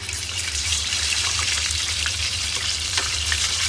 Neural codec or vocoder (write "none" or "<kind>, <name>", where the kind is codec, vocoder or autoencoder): vocoder, BigVGAN v2